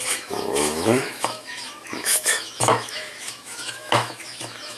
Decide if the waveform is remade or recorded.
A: remade